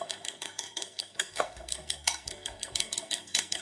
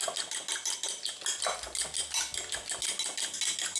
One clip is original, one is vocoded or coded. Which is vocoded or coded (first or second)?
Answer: first